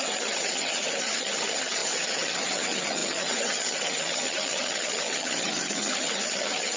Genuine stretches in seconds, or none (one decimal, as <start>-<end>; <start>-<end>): none

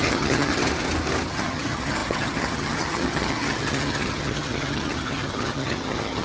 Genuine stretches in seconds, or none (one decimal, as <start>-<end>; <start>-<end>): 0.6-1.3

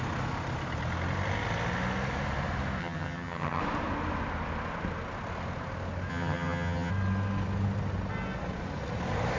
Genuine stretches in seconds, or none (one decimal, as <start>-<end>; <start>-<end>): 0.0-2.8; 3.6-6.1; 6.9-9.4

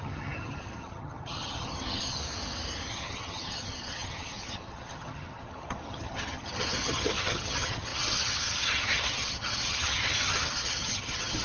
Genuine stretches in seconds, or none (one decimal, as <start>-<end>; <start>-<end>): 2.2-2.9

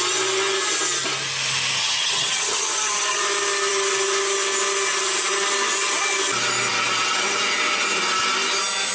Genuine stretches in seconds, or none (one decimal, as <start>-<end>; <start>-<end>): 0.0-1.8; 3.2-8.9